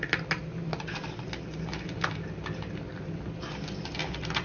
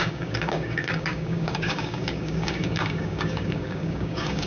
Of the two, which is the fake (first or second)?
second